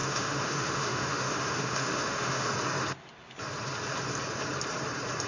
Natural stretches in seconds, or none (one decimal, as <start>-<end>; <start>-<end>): 2.5-5.3